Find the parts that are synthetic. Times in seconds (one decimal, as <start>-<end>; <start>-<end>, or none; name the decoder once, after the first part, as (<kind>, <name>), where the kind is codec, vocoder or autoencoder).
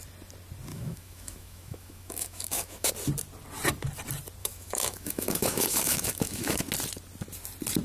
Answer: 0.7-2.9 (autoencoder, DAC-VAE); 4.4-6.6